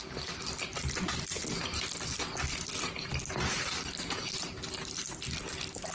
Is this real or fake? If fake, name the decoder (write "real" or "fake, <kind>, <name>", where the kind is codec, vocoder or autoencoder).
real